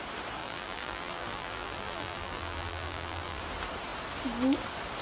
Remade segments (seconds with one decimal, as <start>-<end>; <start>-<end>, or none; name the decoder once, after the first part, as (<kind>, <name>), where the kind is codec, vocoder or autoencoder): 0.4-3.4 (vocoder, BigVGAN v2)